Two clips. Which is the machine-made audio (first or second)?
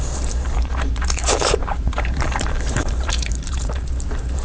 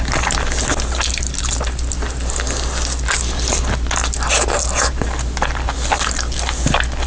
first